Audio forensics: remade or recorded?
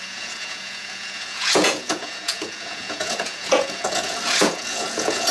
remade